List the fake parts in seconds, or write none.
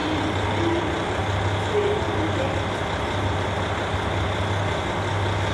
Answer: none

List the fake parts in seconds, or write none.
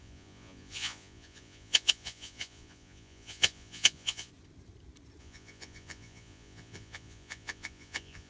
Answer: 0.0-4.3 (vocoder, Vocos); 5.2-8.3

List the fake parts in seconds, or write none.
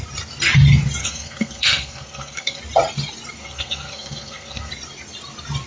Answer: 1.0-2.6 (codec, SNAC); 3.4-4.7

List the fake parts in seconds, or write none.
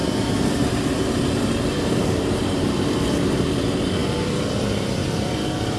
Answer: 0.0-3.4 (vocoder, BigVGAN v2)